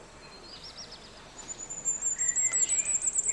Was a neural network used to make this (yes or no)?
no